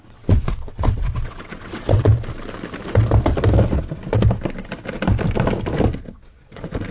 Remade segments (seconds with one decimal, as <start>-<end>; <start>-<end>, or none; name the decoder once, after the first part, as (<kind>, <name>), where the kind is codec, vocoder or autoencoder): 0.0-2.1 (vocoder, WaveNeXt); 6.0-6.9